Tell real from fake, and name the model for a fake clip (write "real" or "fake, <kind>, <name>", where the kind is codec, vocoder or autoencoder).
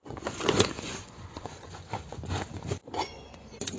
fake, vocoder, Vocos